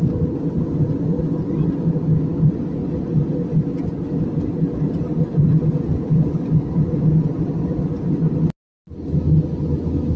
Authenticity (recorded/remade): recorded